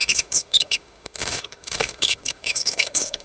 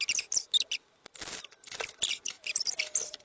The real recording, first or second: second